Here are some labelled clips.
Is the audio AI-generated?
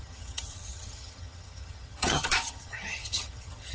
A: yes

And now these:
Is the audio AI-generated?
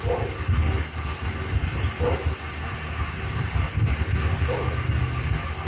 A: no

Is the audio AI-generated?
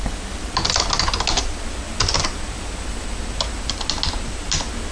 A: no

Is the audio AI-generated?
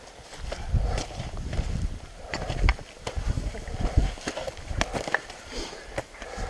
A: no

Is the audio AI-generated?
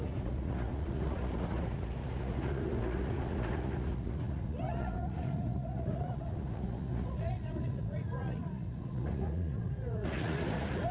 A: yes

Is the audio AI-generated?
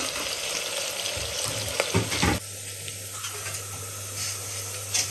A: no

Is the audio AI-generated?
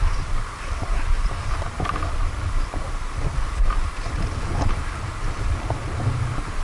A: yes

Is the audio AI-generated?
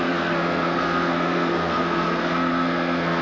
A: yes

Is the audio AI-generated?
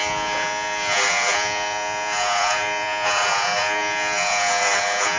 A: yes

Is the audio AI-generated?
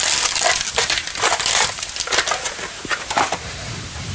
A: no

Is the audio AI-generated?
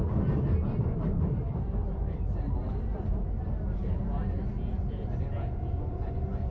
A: no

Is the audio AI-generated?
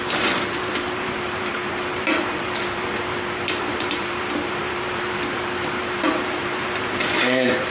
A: yes